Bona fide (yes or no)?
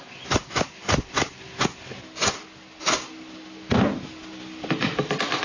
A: yes